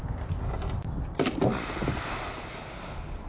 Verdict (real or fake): real